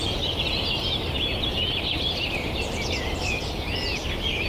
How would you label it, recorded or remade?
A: recorded